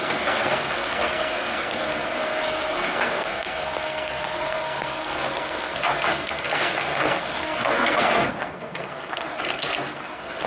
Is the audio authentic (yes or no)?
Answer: no